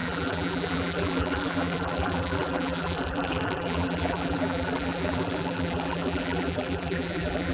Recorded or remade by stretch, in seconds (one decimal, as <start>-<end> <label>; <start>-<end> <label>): 0.0-7.5 remade